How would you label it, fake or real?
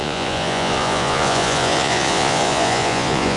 fake